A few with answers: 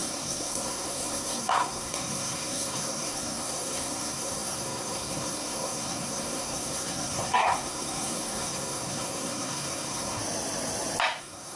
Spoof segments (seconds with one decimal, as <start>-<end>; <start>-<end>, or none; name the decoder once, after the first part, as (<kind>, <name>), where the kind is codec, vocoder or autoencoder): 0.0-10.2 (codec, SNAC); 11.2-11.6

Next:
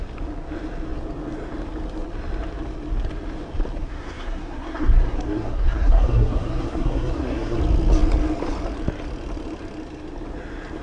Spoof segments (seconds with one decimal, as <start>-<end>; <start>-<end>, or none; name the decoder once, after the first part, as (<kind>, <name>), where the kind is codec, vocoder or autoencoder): 3.8-7.6 (codec, SNAC)

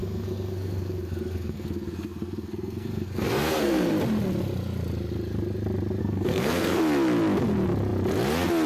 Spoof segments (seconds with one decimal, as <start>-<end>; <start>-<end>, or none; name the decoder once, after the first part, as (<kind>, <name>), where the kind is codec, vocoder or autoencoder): 0.0-3.9 (codec, SNAC); 6.0-6.8

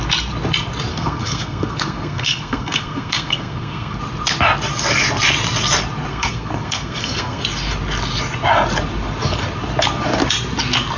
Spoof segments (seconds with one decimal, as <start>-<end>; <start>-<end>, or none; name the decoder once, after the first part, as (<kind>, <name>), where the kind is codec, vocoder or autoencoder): 0.9-4.0 (codec, SNAC); 6.1-7.4